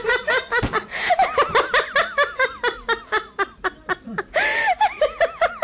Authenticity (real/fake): real